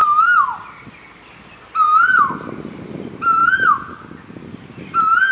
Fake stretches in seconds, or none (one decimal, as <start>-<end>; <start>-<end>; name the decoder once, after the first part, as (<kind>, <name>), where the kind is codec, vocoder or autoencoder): none